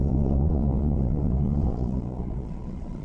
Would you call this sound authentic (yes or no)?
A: no